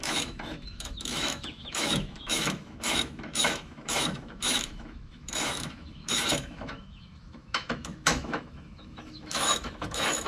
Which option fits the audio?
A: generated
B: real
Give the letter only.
A